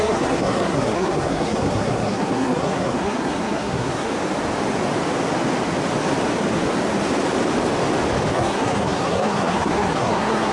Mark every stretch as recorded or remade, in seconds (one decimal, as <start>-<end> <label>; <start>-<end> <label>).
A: 0.0-4.1 remade; 4.1-8.3 recorded; 8.3-10.5 remade